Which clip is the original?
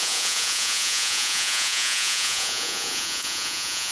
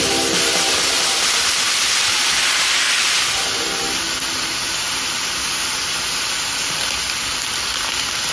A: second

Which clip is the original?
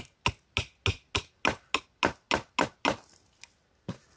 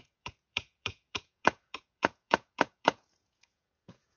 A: first